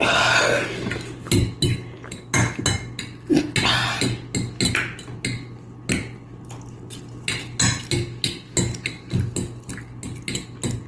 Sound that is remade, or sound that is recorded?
recorded